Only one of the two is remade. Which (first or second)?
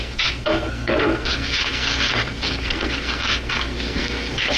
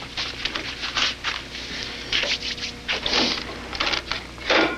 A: first